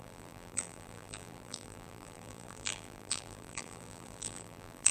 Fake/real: fake